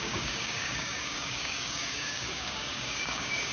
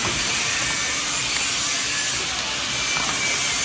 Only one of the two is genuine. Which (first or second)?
second